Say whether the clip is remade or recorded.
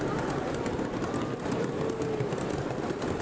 recorded